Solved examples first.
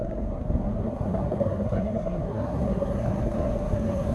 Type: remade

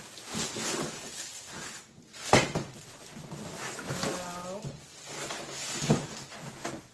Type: recorded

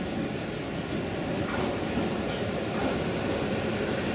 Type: recorded